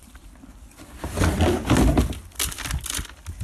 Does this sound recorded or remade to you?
recorded